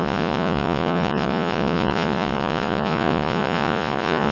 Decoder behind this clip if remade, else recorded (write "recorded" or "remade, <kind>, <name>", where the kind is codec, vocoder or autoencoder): remade, vocoder, Vocos